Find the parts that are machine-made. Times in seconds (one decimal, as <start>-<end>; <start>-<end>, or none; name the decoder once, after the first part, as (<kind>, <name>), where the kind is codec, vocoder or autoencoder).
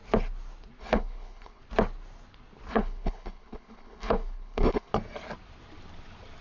0.8-1.6 (codec, HILCodec); 2.7-4.9